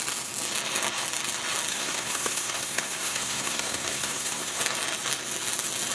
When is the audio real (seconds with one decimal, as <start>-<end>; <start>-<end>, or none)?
0.0-1.7; 4.6-5.9